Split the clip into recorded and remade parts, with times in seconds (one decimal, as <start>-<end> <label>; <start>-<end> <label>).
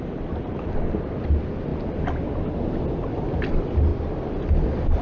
0.0-5.0 recorded